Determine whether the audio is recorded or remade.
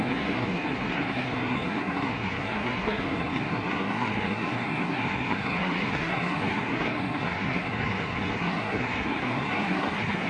remade